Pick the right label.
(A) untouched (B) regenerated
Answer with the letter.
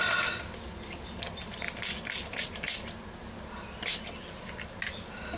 A